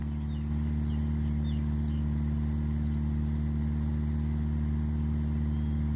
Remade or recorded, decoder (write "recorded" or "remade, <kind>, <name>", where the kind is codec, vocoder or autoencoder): recorded